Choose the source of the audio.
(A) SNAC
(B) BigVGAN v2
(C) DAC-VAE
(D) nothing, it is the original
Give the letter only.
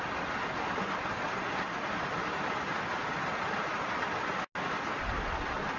D